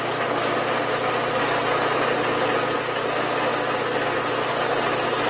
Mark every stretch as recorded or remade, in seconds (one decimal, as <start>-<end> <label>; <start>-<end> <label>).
0.0-5.3 recorded